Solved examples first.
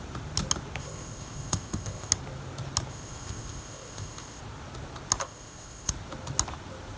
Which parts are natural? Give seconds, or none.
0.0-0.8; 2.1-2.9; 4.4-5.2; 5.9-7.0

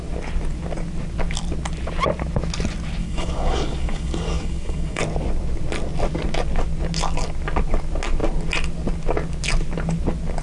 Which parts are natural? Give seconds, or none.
0.0-3.0; 5.0-10.4

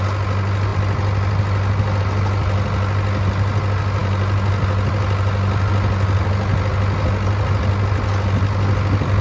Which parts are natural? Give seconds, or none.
0.0-9.2